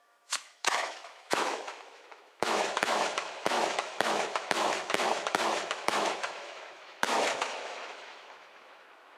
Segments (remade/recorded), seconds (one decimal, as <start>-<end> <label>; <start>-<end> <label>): 0.0-9.2 remade